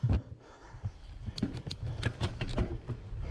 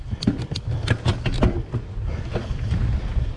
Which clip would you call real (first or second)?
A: second